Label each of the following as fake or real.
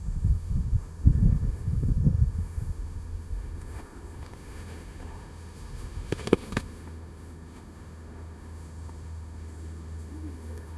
fake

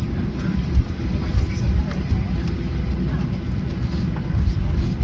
real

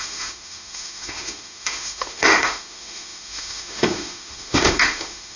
fake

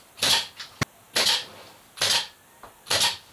real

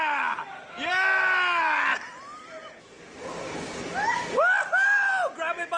real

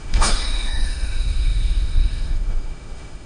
fake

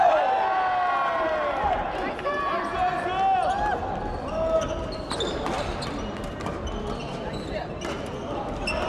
real